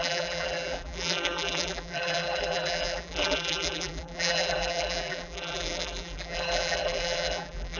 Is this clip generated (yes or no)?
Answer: yes